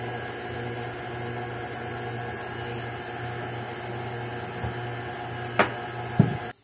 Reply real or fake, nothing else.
real